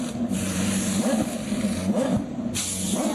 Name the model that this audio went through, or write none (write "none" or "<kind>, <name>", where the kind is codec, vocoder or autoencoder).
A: vocoder, BigVGAN v2